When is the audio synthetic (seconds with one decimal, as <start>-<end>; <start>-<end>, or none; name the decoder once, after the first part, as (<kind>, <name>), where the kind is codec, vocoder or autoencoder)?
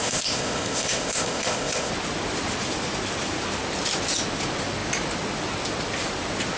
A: 0.0-1.9 (codec, ZipCodec)